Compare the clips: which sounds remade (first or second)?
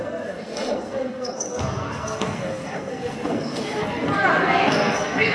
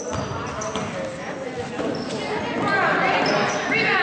first